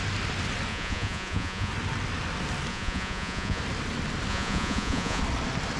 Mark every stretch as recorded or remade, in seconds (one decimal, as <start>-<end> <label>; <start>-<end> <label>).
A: 0.0-0.7 recorded; 0.7-1.7 remade; 1.7-2.7 recorded; 2.7-3.6 remade; 3.6-4.3 recorded; 4.3-5.2 remade; 5.2-5.8 recorded